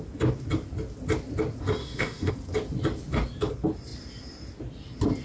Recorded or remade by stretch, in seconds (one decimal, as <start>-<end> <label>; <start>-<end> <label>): 0.0-1.8 recorded; 1.8-2.3 remade; 2.3-5.2 recorded